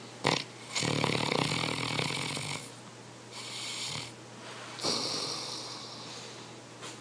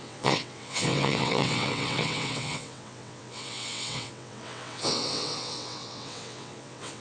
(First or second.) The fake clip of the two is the second